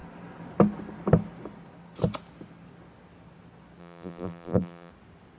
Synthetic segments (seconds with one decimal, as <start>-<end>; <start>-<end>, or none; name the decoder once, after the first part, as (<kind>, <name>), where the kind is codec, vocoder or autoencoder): 3.8-4.9 (vocoder, BigVGAN v2)